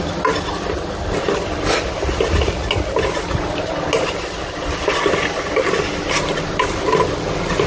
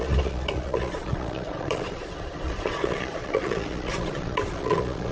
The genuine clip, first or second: first